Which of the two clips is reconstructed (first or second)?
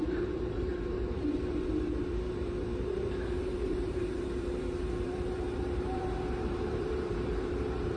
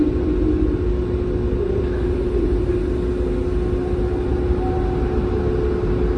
first